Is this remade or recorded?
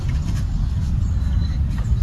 recorded